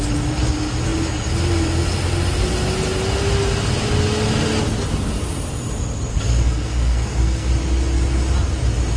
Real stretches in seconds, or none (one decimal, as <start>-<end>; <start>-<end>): 0.0-6.1; 7.5-9.0